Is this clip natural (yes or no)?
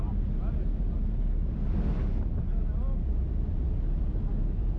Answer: yes